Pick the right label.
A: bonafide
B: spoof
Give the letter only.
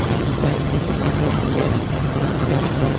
B